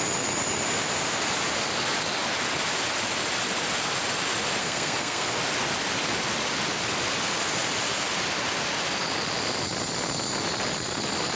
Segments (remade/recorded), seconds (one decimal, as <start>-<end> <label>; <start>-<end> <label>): 0.0-4.6 recorded; 4.6-5.4 remade; 5.4-11.4 recorded